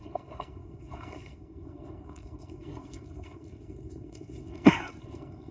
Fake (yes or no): yes